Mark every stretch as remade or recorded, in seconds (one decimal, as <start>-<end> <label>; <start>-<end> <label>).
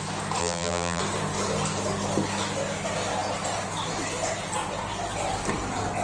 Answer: 0.0-0.4 recorded; 0.4-1.0 remade; 1.0-6.0 recorded